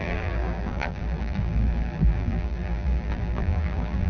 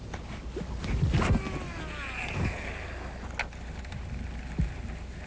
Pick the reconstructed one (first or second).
first